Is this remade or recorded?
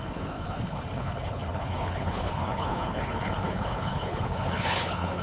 remade